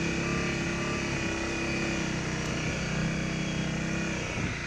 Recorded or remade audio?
recorded